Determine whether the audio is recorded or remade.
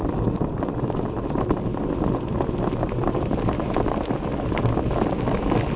recorded